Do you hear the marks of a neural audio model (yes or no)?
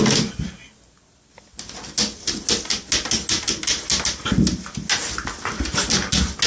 no